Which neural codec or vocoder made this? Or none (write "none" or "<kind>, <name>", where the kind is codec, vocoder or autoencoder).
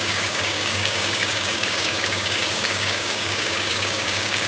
codec, DAC